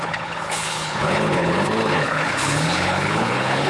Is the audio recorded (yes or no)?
no